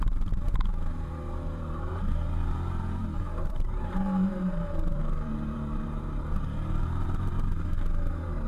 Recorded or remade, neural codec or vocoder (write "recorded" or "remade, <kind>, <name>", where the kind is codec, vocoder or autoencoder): remade, vocoder, BigVGAN v2